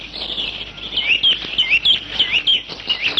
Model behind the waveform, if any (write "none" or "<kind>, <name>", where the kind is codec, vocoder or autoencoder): none